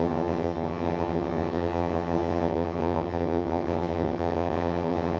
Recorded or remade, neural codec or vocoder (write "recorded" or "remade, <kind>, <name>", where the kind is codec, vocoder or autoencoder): remade, vocoder, HiFi-GAN